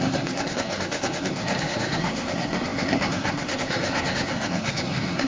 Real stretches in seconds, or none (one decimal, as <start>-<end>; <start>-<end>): none